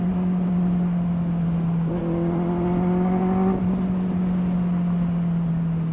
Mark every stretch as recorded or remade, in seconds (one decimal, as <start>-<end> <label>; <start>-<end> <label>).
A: 0.0-5.9 recorded